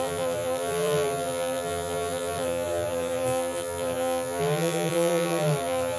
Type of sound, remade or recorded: remade